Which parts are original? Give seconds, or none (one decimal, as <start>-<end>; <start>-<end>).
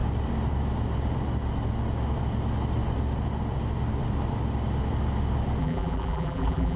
0.0-5.6